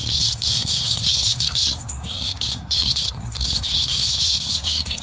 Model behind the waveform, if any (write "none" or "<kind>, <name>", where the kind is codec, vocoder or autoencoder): codec, SNAC